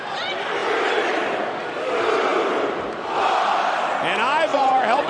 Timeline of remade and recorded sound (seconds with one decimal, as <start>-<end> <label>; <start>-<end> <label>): 0.0-4.5 recorded; 4.5-5.1 remade